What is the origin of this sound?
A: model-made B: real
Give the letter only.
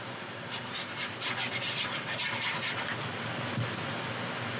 B